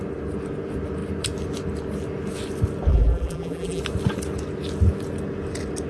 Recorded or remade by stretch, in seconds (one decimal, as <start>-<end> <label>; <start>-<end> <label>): 0.0-2.9 recorded; 2.9-3.8 remade; 3.8-5.9 recorded